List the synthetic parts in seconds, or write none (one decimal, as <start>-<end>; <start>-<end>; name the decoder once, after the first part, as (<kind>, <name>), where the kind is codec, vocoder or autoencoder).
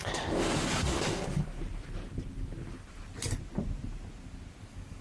0.0-1.6 (codec, DAC); 4.6-5.0